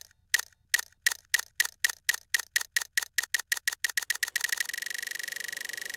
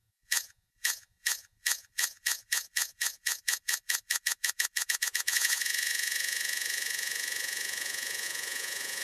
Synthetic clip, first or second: second